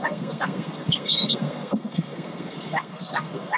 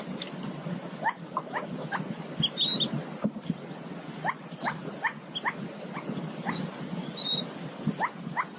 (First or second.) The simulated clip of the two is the first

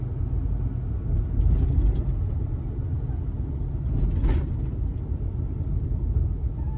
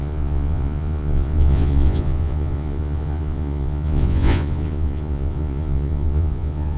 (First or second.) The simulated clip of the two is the second